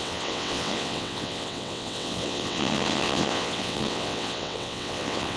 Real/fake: fake